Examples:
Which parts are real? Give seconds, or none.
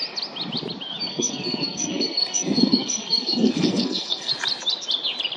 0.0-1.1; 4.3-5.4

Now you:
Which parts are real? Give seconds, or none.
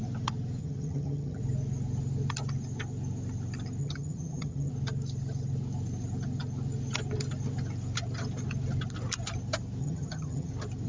0.0-0.6; 1.4-3.8; 4.7-9.8; 10.5-10.9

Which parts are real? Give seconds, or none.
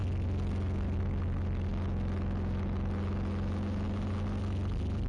0.0-5.1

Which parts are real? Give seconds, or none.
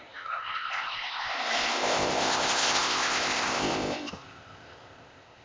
none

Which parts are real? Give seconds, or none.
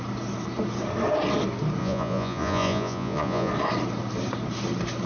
0.0-1.8; 3.5-5.1